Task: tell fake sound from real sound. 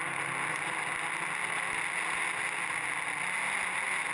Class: real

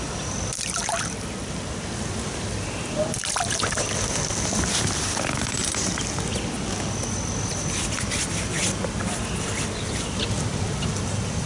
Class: real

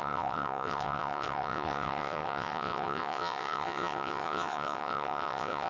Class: fake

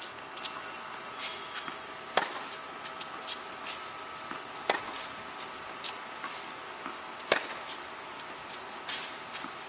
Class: real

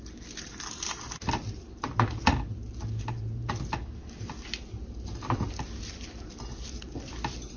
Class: real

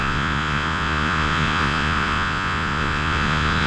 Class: fake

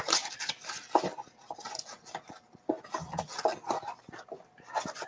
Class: real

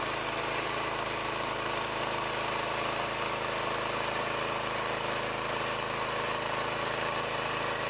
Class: real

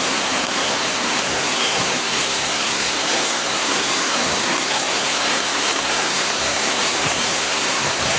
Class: fake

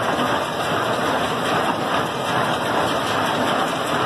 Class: real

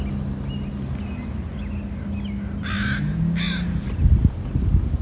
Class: real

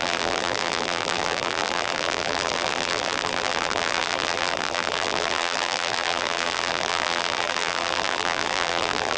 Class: fake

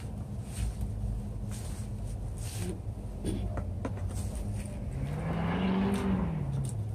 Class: real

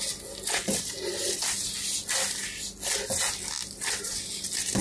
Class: real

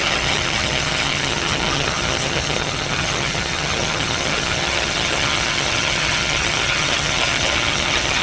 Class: fake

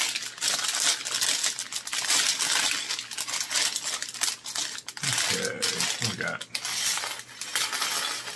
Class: real